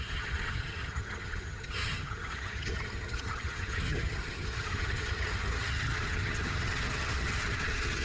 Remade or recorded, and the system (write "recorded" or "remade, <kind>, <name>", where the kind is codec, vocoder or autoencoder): remade, vocoder, HiFi-GAN